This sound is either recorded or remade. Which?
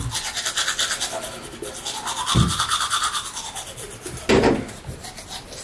recorded